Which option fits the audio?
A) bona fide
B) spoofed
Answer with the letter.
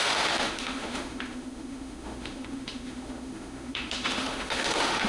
B